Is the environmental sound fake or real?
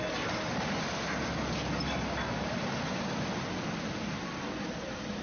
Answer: real